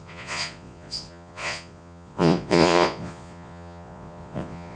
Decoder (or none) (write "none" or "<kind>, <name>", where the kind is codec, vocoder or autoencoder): vocoder, Vocos